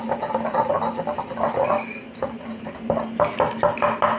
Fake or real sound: real